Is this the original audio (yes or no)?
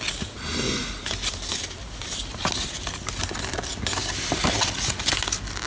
yes